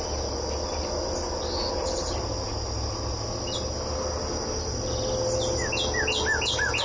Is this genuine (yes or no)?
yes